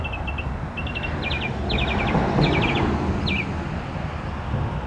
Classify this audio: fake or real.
real